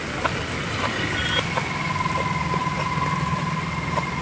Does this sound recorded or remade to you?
recorded